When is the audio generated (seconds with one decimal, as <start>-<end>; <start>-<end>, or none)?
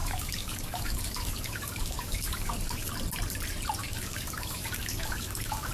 0.0-2.9; 3.8-5.7